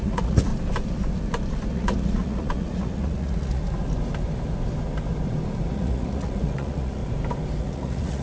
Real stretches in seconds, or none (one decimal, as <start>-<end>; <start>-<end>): 0.5-1.7; 3.6-5.7; 7.0-7.6